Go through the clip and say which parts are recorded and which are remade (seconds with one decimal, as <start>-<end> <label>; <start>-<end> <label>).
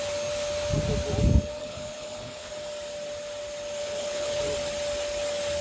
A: 0.0-1.6 recorded; 1.6-2.5 remade; 2.5-3.8 recorded; 3.8-4.4 remade; 4.4-5.6 recorded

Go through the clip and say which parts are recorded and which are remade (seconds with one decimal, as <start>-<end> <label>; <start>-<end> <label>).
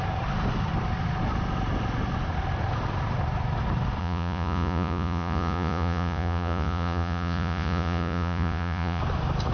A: 0.0-4.0 recorded; 4.0-9.0 remade; 9.0-9.5 recorded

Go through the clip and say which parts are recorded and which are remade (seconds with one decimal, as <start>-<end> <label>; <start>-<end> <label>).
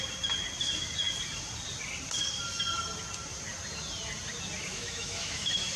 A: 0.0-4.7 recorded; 4.7-5.8 remade